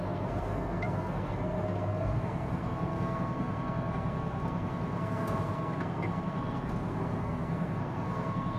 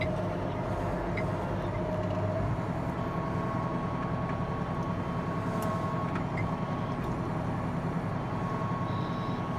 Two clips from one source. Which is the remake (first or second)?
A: first